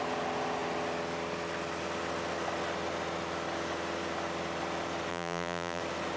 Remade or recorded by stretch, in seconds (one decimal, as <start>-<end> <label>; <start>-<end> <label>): 0.0-5.1 recorded; 5.1-5.8 remade; 5.8-6.2 recorded